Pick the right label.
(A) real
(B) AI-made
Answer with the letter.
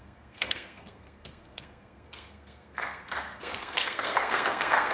B